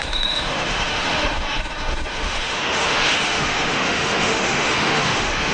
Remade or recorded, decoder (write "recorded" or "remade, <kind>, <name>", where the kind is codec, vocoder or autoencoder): remade, autoencoder, DAC-VAE